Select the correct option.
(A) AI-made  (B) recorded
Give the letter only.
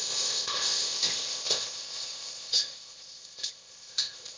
A